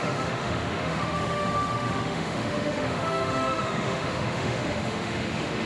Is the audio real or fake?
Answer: fake